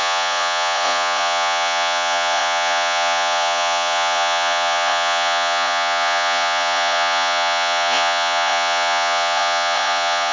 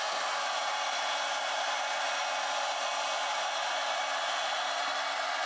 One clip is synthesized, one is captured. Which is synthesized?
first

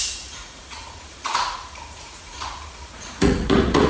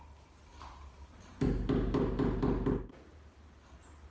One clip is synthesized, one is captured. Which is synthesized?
first